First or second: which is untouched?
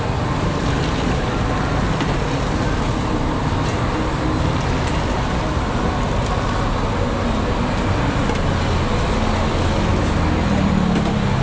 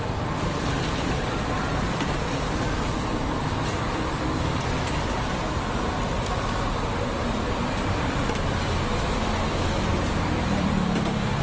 first